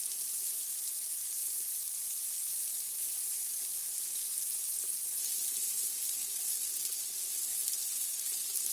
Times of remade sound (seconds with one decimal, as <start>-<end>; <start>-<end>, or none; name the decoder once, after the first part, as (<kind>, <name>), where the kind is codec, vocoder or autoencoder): 6.2-6.8 (vocoder, BigVGAN v2); 7.5-8.7